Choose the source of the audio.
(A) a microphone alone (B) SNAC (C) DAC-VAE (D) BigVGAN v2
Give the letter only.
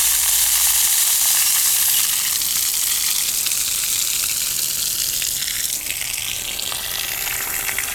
A